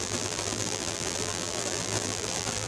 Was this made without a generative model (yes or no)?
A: no